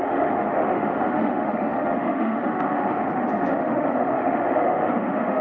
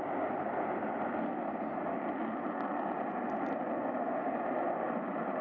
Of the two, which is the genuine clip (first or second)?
second